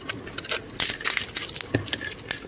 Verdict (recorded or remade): recorded